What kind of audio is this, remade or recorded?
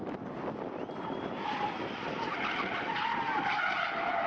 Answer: recorded